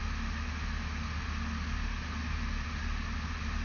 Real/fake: real